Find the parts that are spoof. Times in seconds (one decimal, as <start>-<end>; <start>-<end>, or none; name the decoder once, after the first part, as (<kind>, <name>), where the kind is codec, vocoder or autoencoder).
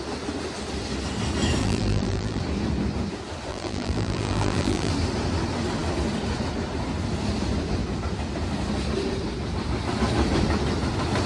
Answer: 1.6-2.4 (vocoder, BigVGAN v2); 3.5-4.9